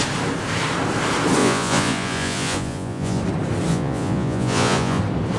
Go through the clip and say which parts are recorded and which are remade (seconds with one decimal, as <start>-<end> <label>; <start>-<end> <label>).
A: 0.0-1.4 recorded; 1.4-3.2 remade; 3.2-3.7 recorded; 3.7-5.0 remade; 5.0-5.4 recorded